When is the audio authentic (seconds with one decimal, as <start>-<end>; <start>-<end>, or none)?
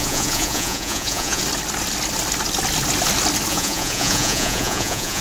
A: 1.4-3.5